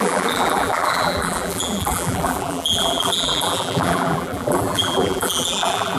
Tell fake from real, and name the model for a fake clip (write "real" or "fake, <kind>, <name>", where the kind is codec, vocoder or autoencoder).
fake, vocoder, BigVGAN v2